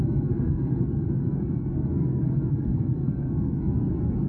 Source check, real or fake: fake